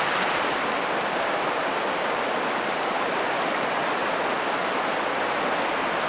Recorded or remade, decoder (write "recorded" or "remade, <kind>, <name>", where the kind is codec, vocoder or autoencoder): recorded